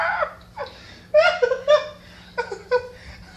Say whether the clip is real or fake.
real